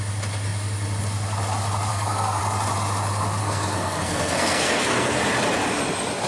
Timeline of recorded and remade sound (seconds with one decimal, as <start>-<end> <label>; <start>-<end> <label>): 0.0-1.9 recorded; 1.9-2.4 remade; 2.4-3.4 recorded; 3.4-5.2 remade; 5.2-6.3 recorded